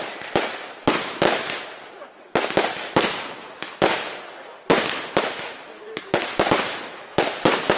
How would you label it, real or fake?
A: real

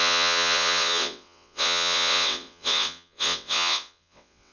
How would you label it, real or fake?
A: fake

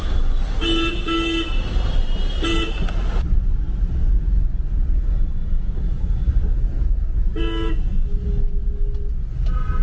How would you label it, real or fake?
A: real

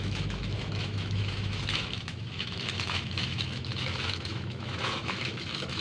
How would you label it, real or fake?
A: fake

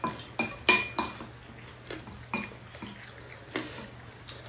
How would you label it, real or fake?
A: real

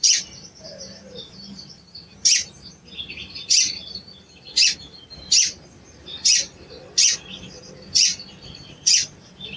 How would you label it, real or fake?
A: fake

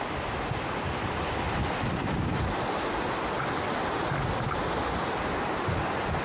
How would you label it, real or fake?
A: real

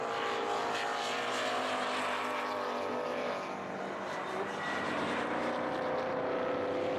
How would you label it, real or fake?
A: real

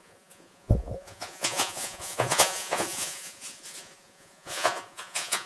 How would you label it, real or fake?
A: fake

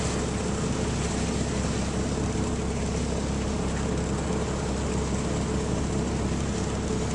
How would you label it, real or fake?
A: real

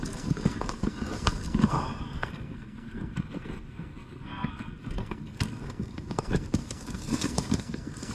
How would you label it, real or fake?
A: fake